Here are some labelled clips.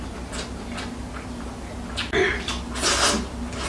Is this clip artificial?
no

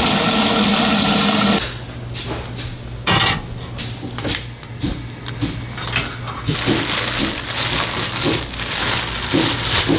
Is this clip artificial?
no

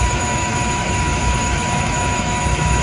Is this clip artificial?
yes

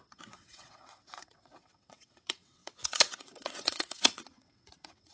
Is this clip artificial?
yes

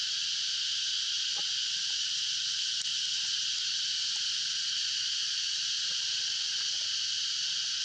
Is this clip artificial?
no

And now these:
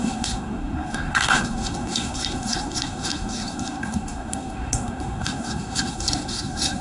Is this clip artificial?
yes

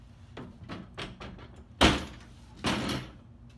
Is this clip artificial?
no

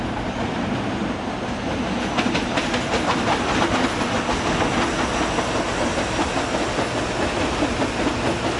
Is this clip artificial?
no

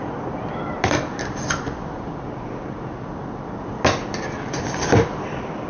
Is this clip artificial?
no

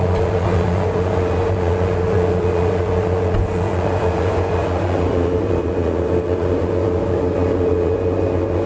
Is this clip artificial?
yes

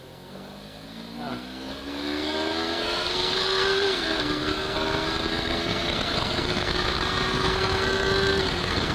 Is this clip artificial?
yes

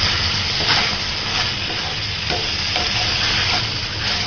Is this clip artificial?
no